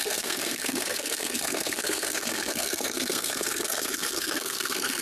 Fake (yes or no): yes